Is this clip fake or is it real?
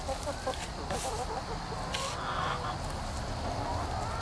real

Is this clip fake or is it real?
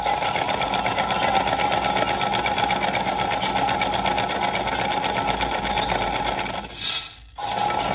real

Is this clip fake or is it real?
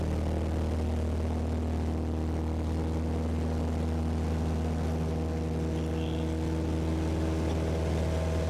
real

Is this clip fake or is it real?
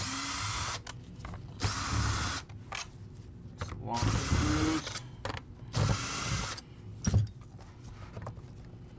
real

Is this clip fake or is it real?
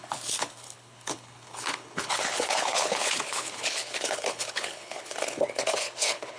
fake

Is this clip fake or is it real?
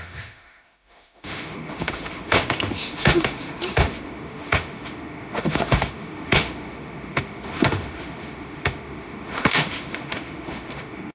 fake